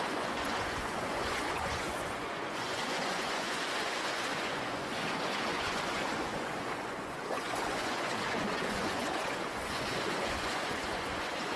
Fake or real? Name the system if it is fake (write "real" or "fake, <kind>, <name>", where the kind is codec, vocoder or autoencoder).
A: fake, vocoder, Vocos